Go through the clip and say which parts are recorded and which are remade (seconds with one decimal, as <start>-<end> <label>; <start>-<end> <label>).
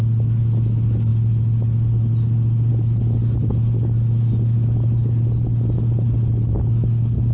0.0-7.3 recorded